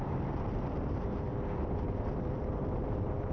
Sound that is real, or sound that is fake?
fake